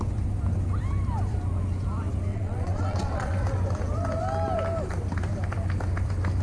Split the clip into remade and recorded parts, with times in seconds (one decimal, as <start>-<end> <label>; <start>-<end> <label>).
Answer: 0.0-2.3 recorded; 2.3-3.4 remade; 3.4-6.4 recorded